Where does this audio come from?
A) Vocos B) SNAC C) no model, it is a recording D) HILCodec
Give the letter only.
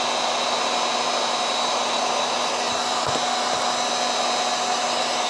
C